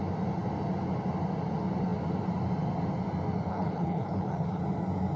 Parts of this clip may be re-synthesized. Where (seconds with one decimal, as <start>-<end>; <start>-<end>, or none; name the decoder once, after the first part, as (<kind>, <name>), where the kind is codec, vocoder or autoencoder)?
3.5-4.6 (codec, HILCodec)